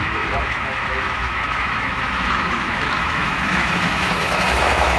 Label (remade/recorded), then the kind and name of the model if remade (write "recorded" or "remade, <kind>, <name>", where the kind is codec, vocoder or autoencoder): remade, autoencoder, DAC-VAE